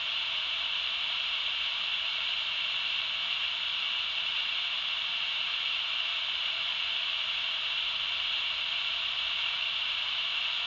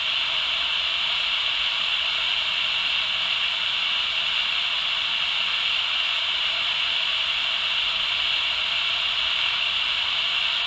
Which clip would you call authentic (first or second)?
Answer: second